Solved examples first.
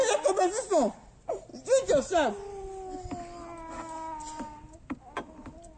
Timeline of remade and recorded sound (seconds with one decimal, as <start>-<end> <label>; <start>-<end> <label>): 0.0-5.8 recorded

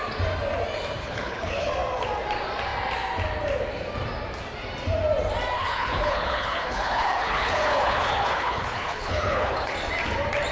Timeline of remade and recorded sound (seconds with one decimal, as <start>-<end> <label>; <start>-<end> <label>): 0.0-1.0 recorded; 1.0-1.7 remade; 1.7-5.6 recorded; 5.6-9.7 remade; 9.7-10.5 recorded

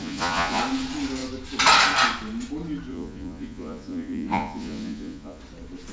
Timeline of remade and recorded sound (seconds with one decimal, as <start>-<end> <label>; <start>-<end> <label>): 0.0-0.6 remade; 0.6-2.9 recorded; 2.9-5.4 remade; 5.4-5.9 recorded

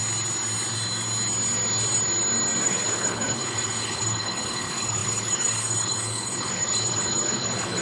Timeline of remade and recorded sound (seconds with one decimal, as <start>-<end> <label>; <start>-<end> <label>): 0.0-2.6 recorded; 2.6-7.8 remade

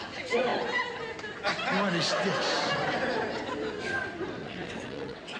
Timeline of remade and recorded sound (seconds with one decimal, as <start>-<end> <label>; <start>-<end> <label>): 0.0-4.4 recorded; 4.4-5.4 remade

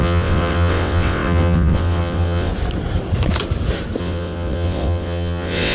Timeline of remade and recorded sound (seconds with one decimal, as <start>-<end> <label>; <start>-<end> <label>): 0.0-2.5 remade; 2.5-4.0 recorded; 4.0-5.7 remade

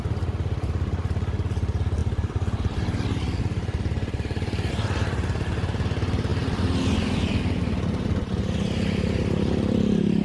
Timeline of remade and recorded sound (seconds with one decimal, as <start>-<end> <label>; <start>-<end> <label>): 0.0-10.2 recorded